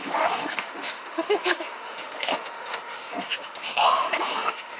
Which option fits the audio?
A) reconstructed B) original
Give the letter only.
A